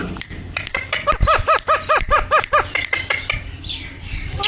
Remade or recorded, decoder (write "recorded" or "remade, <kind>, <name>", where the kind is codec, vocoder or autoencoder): remade, vocoder, BigVGAN v2